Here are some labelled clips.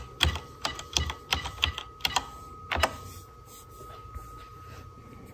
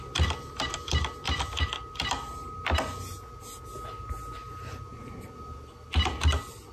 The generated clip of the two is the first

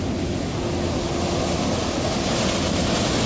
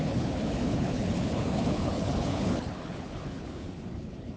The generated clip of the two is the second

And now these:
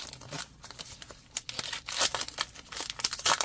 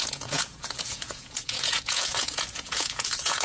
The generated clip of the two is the second